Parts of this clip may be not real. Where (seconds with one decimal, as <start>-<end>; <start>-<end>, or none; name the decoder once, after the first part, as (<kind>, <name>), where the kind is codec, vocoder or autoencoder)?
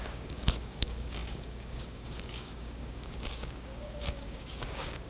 0.0-5.1 (codec, DAC)